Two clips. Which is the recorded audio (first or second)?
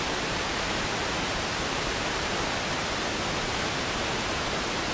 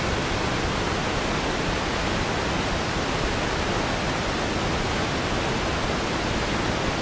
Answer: second